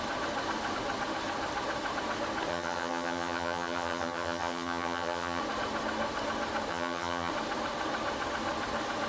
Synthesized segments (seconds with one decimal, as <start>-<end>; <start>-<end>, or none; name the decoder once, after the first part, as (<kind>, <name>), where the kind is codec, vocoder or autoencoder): 2.5-5.4 (vocoder, HiFi-GAN); 6.7-7.3